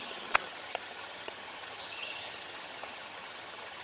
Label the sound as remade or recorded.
remade